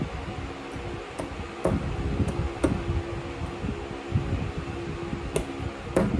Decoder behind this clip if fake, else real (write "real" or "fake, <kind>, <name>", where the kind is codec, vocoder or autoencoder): real